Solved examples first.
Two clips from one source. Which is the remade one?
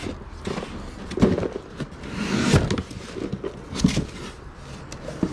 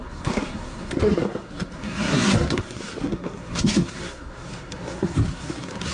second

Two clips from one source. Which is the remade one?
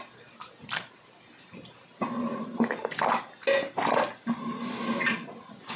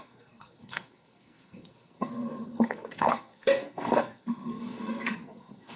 second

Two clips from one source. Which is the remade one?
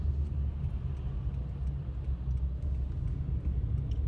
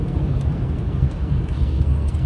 second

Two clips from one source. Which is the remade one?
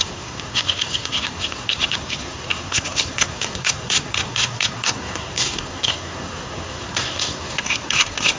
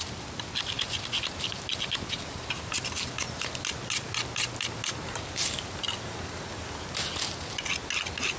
first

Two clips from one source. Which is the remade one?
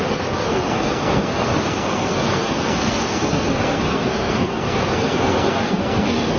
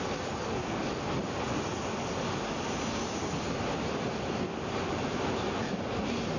first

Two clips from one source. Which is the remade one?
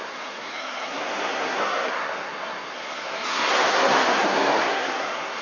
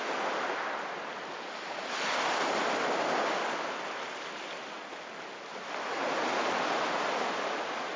first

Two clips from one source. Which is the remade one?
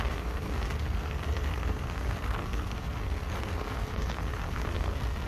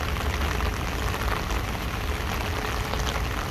first